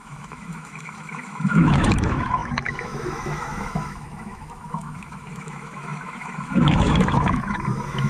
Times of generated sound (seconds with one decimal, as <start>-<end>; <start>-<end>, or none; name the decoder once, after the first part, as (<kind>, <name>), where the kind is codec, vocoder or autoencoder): 0.0-8.1 (autoencoder, DAC-VAE)